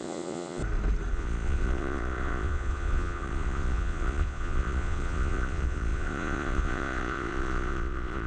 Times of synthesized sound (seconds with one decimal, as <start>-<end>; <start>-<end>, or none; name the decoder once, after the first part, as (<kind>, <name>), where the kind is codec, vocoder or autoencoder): 0.0-0.6 (vocoder, Vocos); 1.1-8.3